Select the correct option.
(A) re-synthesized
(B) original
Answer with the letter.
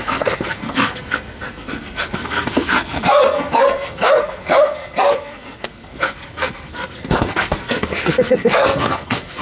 A